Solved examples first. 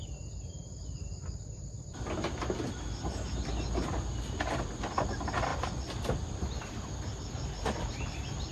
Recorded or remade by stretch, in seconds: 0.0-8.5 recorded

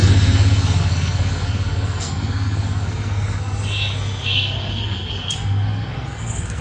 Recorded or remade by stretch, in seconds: 0.0-6.6 remade

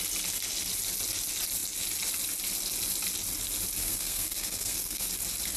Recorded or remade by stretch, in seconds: 0.0-3.8 recorded; 3.8-5.1 remade; 5.1-5.6 recorded

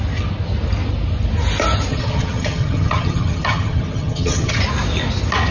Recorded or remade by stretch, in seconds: 0.0-1.9 recorded; 1.9-4.6 remade; 4.6-5.5 recorded

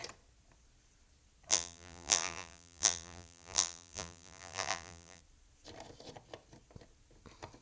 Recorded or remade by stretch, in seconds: 0.0-1.5 recorded; 1.5-5.2 remade; 5.2-7.6 recorded